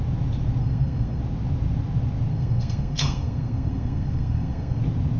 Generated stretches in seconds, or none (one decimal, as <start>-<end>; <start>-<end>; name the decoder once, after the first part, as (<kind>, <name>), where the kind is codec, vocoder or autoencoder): 0.6-1.2 (codec, SNAC); 2.3-4.8